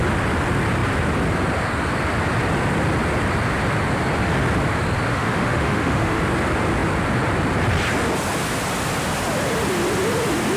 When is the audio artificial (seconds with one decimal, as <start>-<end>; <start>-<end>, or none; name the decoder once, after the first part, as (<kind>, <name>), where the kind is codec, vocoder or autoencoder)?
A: 5.1-6.2 (autoencoder, DAC-VAE)